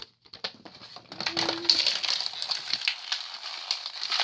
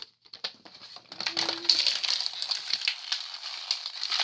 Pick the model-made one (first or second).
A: second